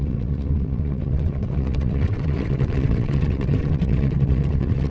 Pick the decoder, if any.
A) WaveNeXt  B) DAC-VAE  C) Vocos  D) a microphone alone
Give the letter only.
A